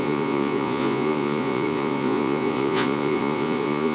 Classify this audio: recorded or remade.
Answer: remade